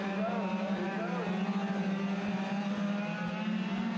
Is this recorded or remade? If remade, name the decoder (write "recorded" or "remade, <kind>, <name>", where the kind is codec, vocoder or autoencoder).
recorded